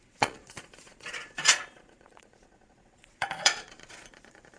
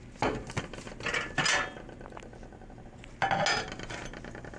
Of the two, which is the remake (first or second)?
first